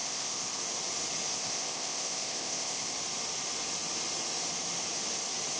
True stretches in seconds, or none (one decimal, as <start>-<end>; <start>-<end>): 0.6-1.3; 2.9-5.6